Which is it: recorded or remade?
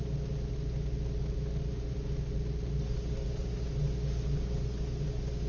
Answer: recorded